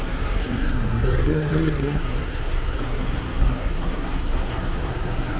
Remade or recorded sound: remade